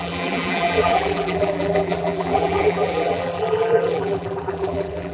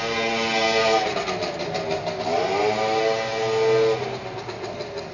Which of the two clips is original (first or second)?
second